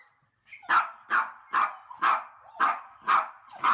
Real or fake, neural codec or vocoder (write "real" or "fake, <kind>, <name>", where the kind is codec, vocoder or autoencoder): real